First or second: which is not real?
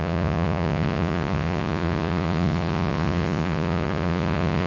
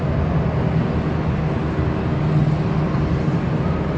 first